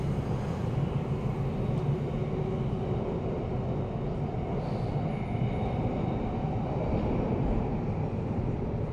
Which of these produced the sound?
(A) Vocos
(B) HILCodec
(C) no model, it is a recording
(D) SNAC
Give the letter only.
C